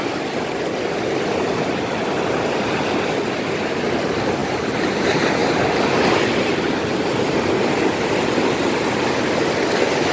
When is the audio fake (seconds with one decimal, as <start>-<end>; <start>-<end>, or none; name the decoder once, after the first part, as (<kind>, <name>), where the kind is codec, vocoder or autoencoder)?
none